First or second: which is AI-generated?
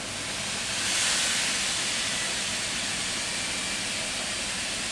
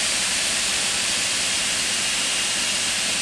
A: second